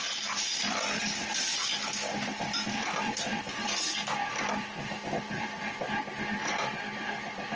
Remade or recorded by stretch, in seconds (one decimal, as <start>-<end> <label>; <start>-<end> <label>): 0.0-7.6 recorded